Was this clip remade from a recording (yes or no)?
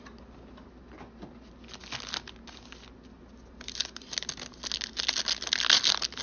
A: no